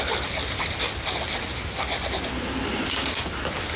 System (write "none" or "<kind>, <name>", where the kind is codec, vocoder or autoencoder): none